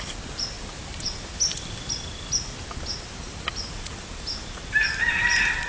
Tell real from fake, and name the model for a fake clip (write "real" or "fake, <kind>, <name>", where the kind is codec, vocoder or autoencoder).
real